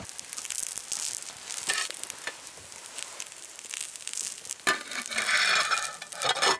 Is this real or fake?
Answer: real